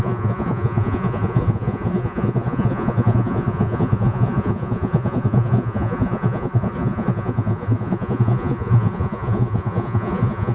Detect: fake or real fake